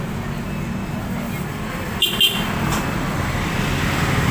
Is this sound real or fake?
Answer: real